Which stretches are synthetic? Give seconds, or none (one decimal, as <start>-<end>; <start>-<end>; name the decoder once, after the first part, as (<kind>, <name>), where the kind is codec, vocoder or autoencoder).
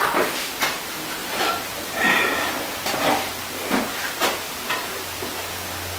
1.2-3.1 (vocoder, BigVGAN v2)